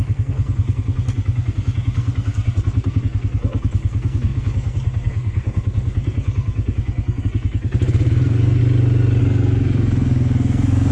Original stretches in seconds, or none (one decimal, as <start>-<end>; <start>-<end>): 8.6-9.2